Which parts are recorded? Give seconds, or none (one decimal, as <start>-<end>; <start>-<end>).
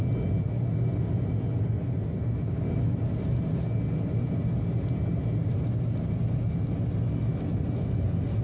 0.0-8.4